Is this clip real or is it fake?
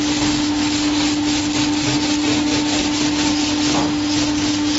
real